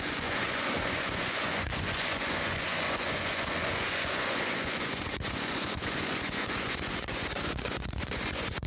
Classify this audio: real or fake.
fake